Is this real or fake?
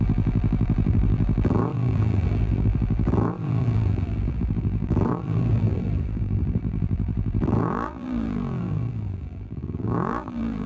fake